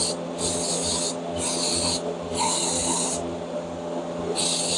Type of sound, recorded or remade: recorded